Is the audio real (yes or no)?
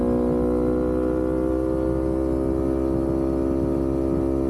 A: yes